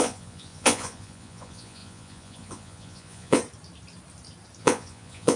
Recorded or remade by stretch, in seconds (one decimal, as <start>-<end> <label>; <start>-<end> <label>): 0.0-3.4 remade; 3.4-4.6 recorded; 4.6-5.4 remade